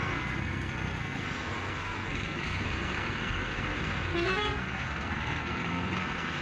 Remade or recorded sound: remade